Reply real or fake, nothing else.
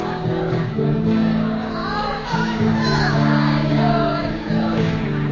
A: fake